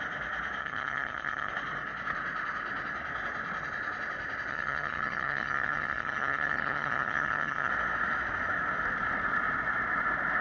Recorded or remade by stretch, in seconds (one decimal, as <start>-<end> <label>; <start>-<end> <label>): 0.0-0.6 recorded; 0.6-1.5 remade; 1.5-4.5 recorded; 4.5-7.7 remade; 7.7-10.4 recorded